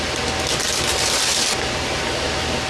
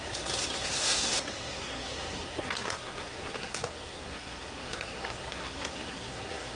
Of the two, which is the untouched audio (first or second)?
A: first